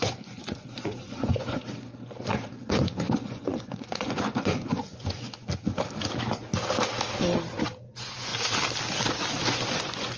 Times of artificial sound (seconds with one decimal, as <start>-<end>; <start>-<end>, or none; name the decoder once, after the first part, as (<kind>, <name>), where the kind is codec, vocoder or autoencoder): 0.0-5.5 (vocoder, Vocos); 7.8-8.3; 9.4-10.2